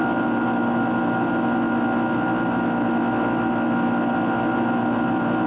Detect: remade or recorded recorded